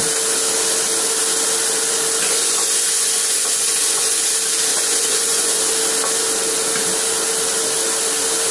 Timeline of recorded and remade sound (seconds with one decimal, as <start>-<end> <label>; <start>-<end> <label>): 0.0-2.2 recorded; 2.2-4.3 remade; 4.3-4.7 recorded; 4.7-5.6 remade; 5.6-8.5 recorded